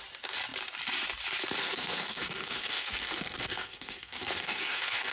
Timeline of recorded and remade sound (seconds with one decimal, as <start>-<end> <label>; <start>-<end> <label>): 0.0-1.6 recorded; 1.6-5.1 remade